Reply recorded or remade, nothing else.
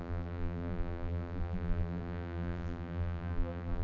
remade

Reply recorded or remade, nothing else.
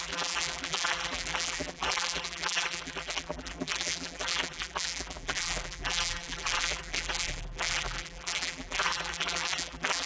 remade